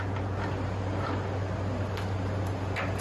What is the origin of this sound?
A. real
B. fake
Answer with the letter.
A